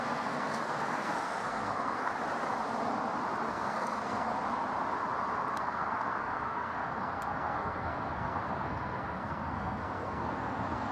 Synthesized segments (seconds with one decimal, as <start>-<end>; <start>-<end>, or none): 0.0-2.1; 3.5-4.3; 5.5-10.9